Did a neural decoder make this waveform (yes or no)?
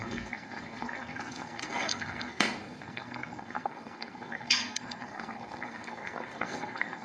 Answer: yes